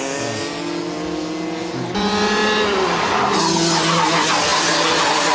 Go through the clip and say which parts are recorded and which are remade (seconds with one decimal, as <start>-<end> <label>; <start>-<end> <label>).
0.0-5.3 recorded